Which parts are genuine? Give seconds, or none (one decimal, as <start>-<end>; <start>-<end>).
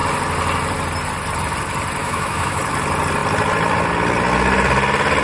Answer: 0.0-2.0; 2.6-5.2